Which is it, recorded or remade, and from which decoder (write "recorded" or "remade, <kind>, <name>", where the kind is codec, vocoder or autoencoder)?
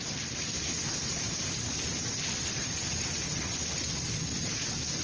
recorded